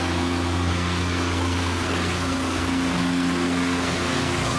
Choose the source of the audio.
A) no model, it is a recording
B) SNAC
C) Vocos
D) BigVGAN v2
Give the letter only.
B